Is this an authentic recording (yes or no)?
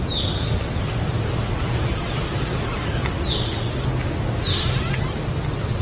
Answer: yes